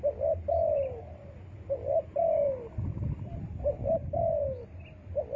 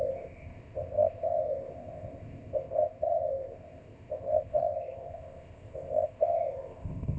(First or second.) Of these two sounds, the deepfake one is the second